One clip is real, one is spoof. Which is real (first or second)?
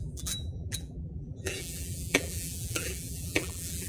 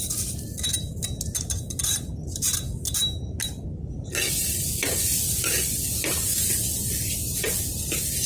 second